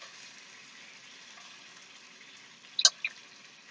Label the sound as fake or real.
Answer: real